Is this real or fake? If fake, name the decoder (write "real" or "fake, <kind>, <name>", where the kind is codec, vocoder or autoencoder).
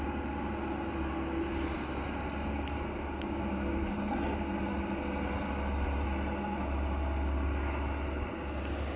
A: real